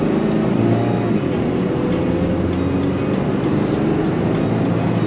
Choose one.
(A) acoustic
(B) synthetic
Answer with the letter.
A